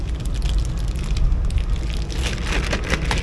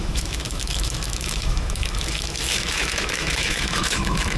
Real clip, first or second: first